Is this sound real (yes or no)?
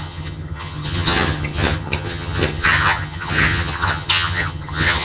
no